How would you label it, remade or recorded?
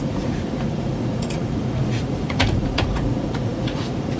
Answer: remade